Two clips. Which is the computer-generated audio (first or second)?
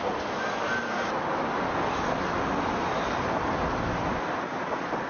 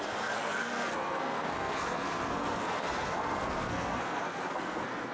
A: second